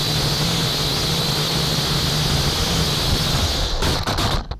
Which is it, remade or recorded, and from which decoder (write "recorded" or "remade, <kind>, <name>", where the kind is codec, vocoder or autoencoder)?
recorded